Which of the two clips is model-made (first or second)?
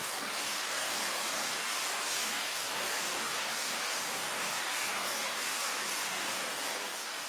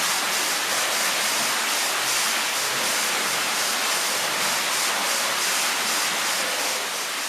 first